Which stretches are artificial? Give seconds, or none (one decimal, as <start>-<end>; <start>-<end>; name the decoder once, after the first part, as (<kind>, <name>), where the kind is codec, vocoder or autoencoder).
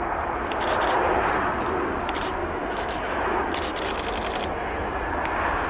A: 2.4-3.4 (autoencoder, DAC-VAE)